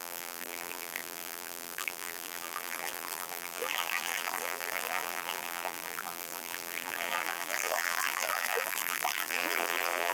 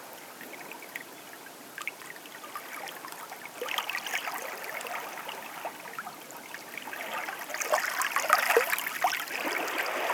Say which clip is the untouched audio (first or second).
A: second